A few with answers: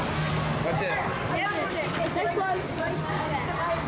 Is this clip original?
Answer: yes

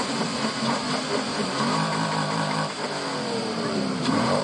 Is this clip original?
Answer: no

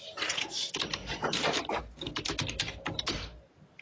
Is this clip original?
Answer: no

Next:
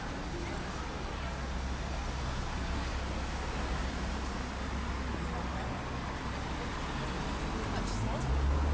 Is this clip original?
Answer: yes